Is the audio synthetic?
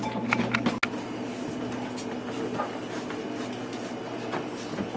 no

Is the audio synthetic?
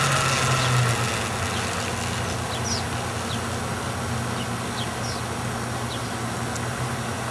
no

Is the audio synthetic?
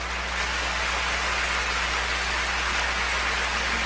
no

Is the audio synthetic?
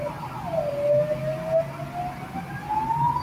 no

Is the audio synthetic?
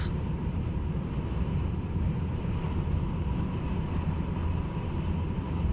no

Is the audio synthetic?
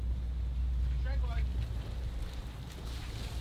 no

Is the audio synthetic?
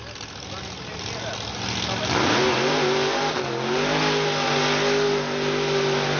no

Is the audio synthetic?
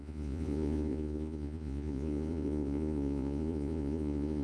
yes